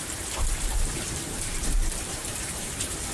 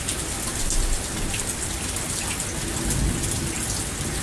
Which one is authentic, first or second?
second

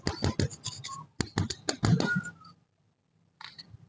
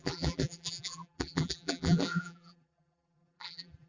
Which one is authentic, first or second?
first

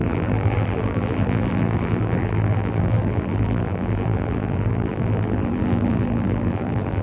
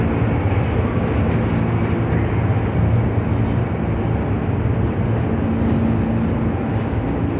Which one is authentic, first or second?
second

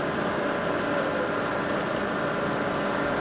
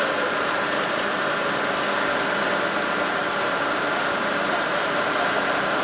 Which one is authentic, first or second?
first